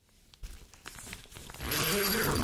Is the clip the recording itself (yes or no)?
yes